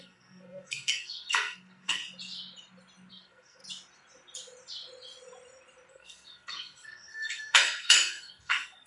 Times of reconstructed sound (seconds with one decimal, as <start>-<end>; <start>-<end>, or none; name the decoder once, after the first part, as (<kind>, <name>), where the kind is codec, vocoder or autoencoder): 0.0-2.0 (codec, SNAC); 3.1-3.6; 5.9-8.9